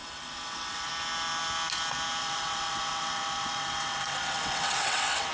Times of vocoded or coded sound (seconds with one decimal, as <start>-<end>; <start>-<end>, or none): 0.0-0.9; 2.2-5.3